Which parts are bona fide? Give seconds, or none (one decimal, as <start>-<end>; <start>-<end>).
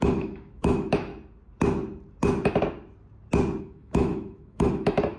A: 1.1-3.6